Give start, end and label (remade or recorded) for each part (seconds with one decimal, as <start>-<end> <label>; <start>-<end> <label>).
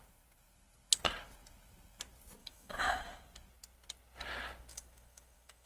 0.0-2.4 recorded; 2.4-3.2 remade; 3.2-4.7 recorded; 4.7-5.7 remade